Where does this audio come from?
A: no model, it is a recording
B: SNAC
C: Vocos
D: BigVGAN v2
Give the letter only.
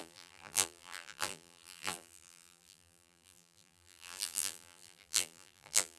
D